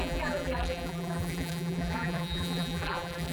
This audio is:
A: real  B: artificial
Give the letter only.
B